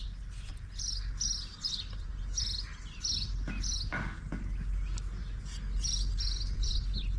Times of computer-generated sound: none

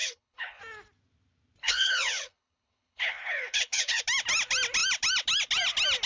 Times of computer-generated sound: 0.0-0.6; 1.6-4.0